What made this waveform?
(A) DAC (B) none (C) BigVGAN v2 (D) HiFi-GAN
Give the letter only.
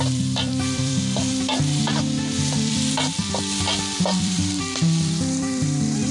C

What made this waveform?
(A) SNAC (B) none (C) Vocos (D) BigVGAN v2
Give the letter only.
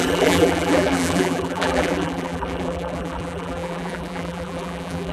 D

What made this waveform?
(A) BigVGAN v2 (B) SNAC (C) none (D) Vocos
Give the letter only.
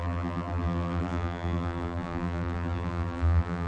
A